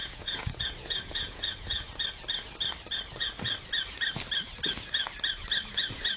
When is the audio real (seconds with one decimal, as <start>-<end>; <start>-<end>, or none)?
1.9-5.6